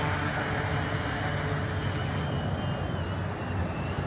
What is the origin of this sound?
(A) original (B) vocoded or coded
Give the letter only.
A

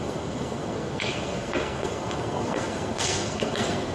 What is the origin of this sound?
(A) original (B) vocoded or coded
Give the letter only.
B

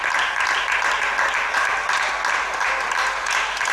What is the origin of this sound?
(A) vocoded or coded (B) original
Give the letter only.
B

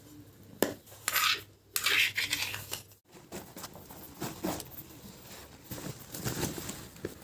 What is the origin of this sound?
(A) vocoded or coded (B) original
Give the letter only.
B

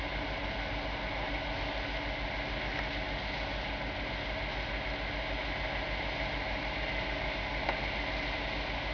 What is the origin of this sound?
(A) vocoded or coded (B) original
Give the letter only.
B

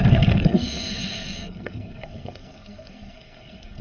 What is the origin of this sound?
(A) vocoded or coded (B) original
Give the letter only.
A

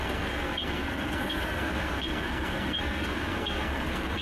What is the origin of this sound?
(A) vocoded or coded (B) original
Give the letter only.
A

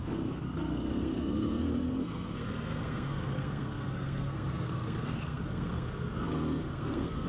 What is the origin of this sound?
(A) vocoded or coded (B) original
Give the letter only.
A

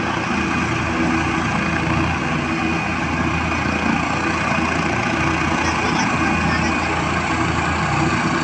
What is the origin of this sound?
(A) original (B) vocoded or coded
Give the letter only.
A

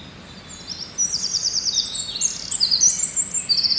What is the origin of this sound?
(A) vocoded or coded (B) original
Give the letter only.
B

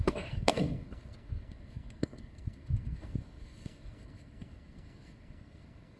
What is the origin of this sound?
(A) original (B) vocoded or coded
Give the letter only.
B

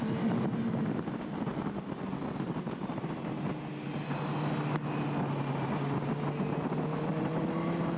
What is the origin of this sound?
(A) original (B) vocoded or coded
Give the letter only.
A